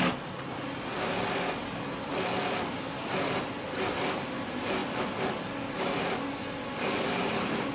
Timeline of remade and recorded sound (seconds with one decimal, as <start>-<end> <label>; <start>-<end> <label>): 0.0-7.7 recorded

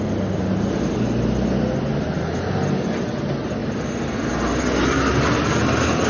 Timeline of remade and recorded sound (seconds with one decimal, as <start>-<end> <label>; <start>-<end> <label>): 0.0-6.1 recorded

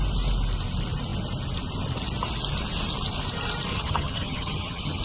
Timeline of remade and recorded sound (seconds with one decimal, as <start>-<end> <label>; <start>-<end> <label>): 0.0-3.7 recorded; 3.7-5.0 remade

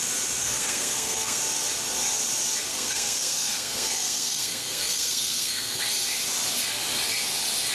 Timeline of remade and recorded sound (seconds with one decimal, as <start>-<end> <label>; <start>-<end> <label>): 0.0-0.4 recorded; 0.4-1.4 remade; 1.4-2.7 recorded; 2.7-5.8 remade; 5.8-7.7 recorded

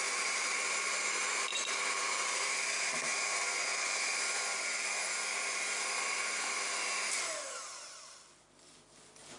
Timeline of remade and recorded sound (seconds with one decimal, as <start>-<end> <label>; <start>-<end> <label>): 0.0-9.4 remade

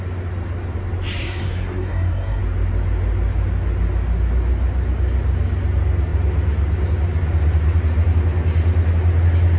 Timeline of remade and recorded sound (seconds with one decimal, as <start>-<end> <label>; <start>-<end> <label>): 0.0-1.2 recorded; 1.2-2.4 remade; 2.4-9.6 recorded

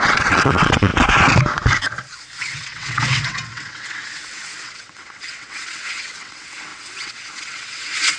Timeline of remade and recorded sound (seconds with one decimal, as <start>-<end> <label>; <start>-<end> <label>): 0.0-0.9 remade; 0.9-2.4 recorded; 2.4-8.2 remade